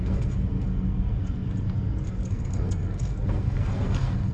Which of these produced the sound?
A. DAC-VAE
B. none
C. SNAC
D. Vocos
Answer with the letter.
C